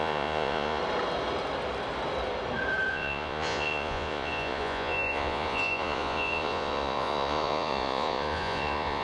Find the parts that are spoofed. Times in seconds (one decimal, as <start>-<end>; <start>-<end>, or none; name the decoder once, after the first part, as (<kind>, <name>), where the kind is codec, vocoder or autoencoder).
0.0-0.8 (vocoder, Vocos); 2.9-9.0